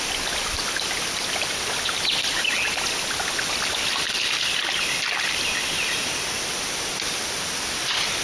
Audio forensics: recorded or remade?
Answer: recorded